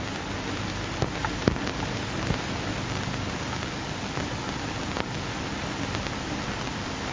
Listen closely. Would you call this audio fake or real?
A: real